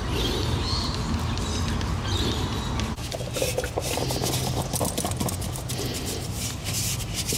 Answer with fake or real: real